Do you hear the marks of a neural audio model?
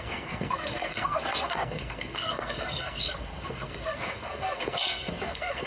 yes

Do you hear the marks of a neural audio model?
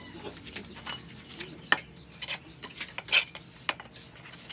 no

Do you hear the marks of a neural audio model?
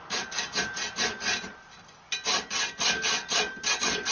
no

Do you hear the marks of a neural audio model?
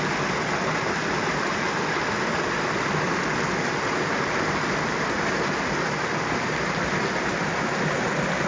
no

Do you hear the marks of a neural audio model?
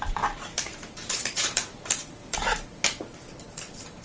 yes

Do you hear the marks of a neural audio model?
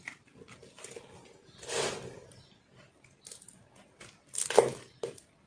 no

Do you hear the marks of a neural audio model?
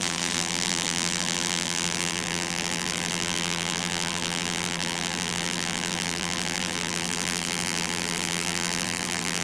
yes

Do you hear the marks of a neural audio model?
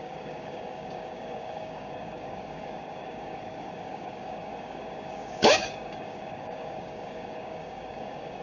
yes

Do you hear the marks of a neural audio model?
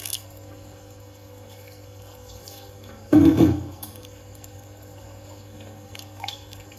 yes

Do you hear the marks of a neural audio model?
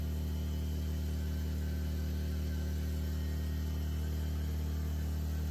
no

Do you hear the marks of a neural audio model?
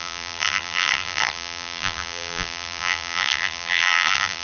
yes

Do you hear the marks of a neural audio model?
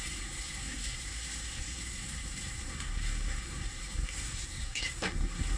yes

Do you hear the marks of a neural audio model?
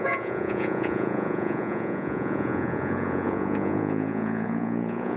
yes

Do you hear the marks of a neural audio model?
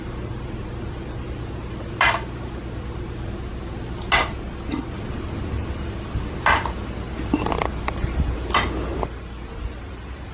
no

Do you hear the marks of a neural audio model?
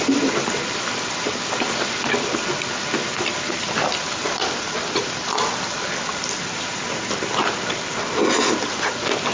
no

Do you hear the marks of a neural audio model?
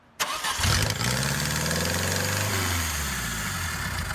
no